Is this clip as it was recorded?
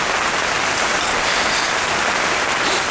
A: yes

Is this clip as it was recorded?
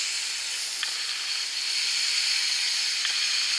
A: yes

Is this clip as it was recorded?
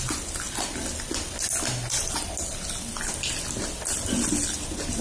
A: yes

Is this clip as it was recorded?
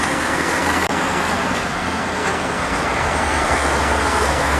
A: no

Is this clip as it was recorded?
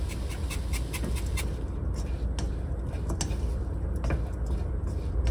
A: yes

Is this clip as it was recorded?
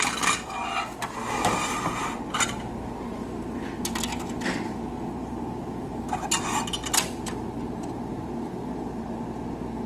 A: yes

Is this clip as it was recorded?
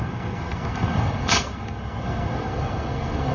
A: no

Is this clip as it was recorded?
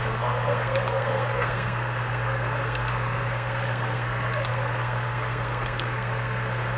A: no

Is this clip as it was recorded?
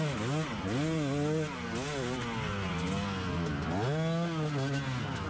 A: yes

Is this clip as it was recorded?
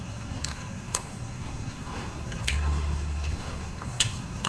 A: no